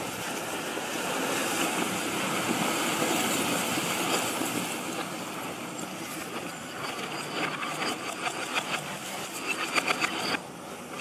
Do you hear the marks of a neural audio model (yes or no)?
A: no